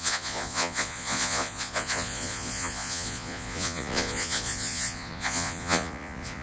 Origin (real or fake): fake